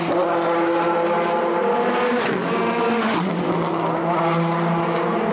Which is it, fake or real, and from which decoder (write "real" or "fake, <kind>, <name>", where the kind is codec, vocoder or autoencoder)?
real